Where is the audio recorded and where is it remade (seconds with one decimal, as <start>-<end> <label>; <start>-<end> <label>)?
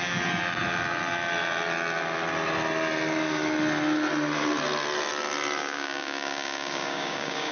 0.0-5.6 recorded; 5.6-7.5 remade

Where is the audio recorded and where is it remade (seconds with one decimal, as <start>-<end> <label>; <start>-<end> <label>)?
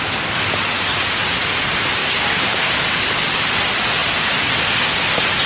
0.0-2.0 recorded; 2.0-2.7 remade; 2.7-5.5 recorded